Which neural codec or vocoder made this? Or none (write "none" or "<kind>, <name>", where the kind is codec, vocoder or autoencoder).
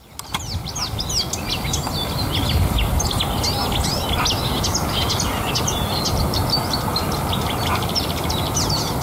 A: none